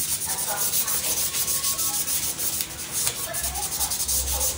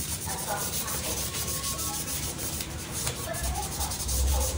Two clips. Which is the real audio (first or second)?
first